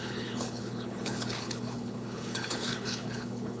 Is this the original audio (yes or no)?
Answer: no